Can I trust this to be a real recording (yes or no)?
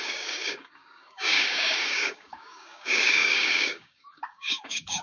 no